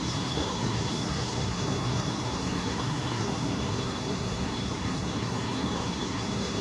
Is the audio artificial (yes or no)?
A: yes